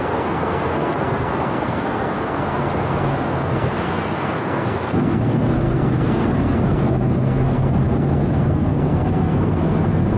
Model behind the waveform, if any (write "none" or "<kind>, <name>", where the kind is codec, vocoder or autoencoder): codec, SNAC